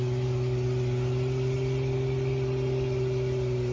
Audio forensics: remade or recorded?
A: recorded